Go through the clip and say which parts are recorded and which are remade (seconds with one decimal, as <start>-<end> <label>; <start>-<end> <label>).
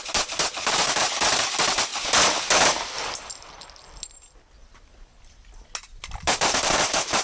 0.0-1.9 remade; 1.9-6.2 recorded; 6.2-7.2 remade